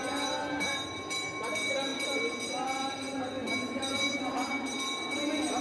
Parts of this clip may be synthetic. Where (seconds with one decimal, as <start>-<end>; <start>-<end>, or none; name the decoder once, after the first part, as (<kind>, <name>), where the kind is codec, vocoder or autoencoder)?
none